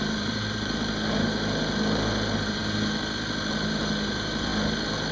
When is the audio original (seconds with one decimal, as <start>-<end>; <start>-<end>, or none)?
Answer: 2.6-3.5; 4.5-5.1